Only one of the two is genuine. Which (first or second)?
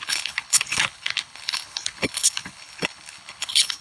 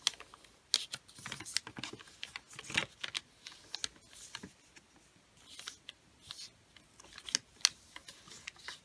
second